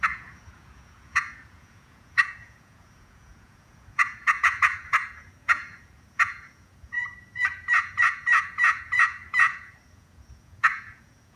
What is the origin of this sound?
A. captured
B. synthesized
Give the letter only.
B